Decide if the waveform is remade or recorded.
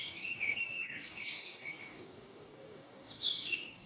remade